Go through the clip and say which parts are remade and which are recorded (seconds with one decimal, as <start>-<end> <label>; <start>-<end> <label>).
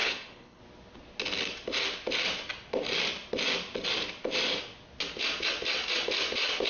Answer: 0.0-0.6 remade; 0.6-6.7 recorded